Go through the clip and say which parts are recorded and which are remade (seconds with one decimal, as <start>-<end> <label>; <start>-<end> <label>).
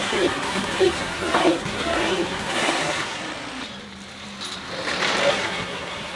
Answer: 0.0-3.2 remade; 3.2-5.3 recorded; 5.3-6.2 remade